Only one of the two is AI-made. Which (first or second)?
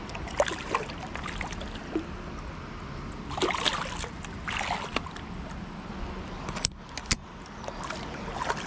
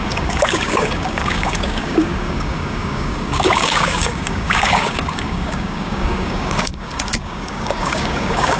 second